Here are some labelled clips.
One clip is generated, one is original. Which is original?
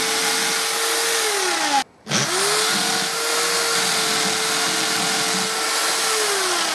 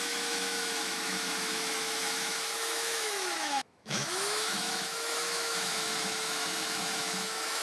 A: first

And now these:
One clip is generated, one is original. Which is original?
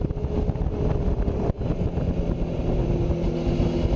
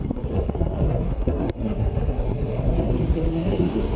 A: first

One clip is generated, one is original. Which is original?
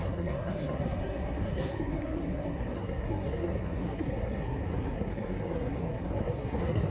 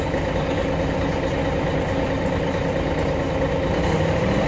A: second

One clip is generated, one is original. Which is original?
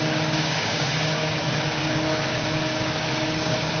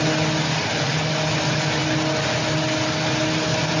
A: second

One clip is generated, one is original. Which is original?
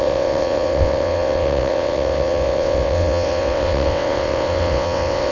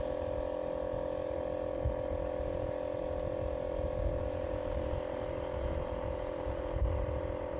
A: second